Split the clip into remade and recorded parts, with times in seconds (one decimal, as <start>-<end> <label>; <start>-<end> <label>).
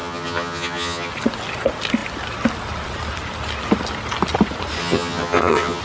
0.0-1.1 remade; 1.1-4.8 recorded; 4.8-5.8 remade